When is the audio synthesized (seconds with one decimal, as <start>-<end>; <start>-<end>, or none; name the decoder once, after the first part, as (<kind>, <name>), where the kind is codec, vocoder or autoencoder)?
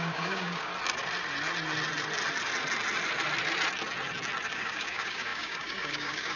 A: 0.0-0.7 (codec, DAC); 4.5-6.4